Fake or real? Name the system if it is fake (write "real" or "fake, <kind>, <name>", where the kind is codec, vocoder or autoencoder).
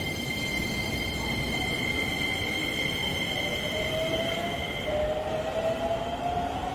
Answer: real